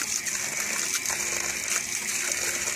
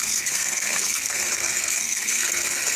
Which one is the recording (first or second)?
first